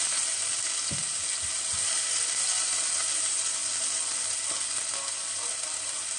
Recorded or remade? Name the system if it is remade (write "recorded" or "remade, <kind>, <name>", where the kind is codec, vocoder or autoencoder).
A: recorded